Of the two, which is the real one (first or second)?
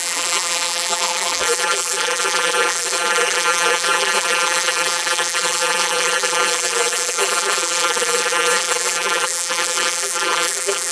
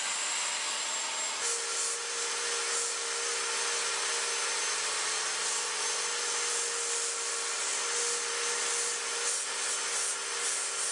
second